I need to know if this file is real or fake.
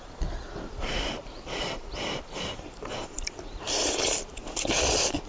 fake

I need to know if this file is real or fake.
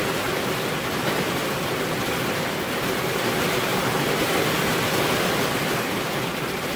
real